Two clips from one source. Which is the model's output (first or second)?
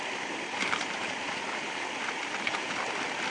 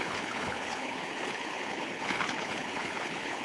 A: second